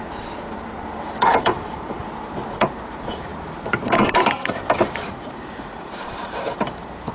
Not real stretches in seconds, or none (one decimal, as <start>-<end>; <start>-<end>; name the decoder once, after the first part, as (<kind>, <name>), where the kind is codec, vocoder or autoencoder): 0.0-7.1 (vocoder, BigVGAN v2)